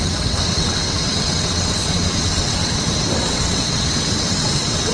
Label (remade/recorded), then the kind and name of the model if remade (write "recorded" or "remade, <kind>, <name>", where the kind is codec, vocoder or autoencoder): remade, vocoder, WaveNeXt